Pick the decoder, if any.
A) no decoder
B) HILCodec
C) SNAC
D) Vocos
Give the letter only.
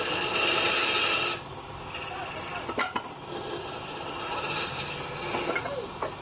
A